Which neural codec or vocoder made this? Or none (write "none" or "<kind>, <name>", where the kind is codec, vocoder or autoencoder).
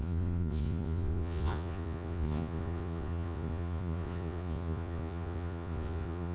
vocoder, Vocos